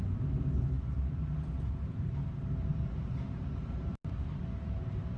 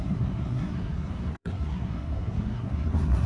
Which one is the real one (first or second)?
first